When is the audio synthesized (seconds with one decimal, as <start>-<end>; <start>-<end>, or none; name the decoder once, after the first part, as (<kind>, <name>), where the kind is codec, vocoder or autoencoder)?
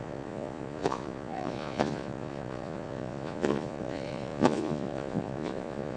0.0-6.0 (vocoder, Vocos)